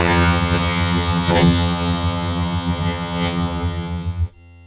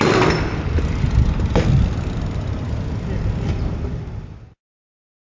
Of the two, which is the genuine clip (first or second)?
second